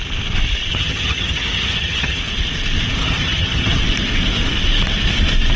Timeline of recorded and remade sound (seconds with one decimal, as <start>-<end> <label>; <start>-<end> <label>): 0.0-0.7 recorded; 0.7-2.2 remade; 2.2-3.0 recorded; 3.0-3.8 remade; 3.8-5.6 recorded